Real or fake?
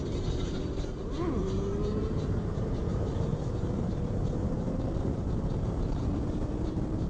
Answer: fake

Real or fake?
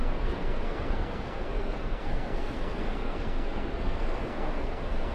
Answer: fake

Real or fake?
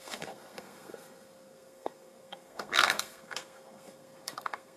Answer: fake